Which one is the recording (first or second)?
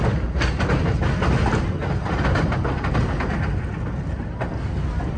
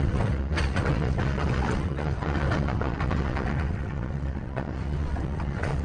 first